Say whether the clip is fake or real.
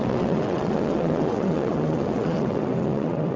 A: fake